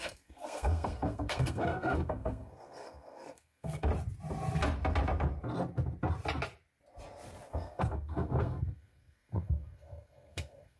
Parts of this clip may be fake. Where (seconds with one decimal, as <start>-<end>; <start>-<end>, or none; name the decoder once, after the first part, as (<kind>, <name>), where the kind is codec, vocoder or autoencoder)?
0.0-3.9 (codec, SNAC); 7.5-10.8